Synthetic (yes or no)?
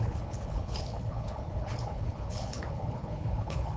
yes